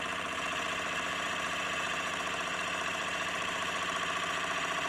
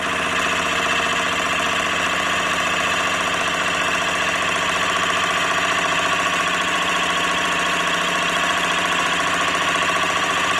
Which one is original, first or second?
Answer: second